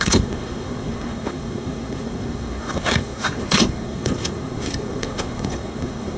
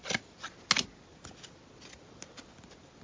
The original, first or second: second